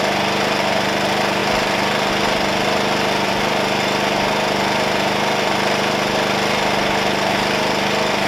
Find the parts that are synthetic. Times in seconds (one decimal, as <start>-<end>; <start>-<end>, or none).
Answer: none